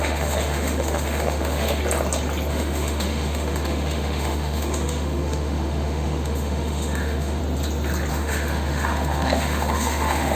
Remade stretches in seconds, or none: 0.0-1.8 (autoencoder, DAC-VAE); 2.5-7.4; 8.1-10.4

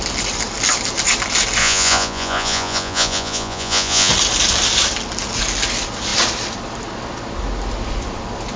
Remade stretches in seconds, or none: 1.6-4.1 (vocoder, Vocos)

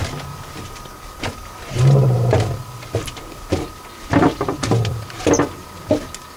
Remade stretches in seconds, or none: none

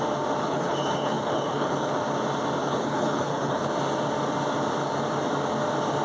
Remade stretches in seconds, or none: 0.4-1.9 (codec, HILCodec); 2.6-3.7